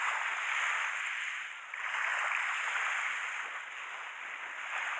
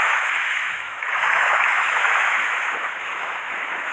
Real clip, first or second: first